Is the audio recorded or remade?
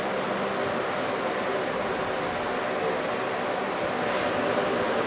recorded